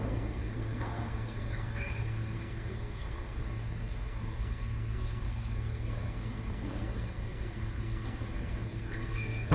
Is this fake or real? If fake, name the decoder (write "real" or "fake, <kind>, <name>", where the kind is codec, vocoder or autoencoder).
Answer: fake, codec, SNAC